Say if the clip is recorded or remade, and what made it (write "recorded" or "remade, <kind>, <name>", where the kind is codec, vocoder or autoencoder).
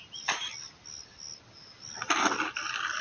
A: recorded